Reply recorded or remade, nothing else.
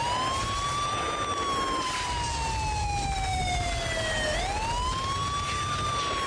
recorded